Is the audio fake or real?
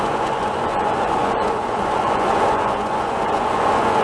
fake